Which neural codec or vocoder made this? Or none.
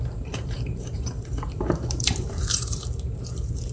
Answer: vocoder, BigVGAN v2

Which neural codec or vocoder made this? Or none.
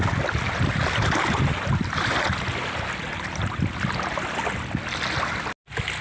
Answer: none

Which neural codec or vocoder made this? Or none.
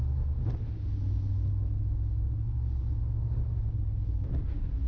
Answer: none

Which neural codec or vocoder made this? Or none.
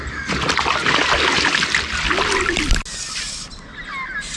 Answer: none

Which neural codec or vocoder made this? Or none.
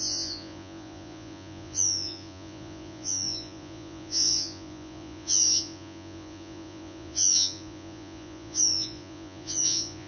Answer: vocoder, Vocos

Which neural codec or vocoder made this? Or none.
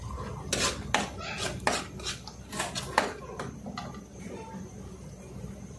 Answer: none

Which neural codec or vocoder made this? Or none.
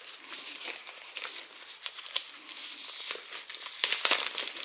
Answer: none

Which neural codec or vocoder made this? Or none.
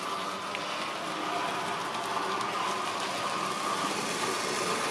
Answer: none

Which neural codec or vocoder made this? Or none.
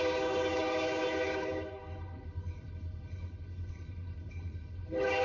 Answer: codec, HILCodec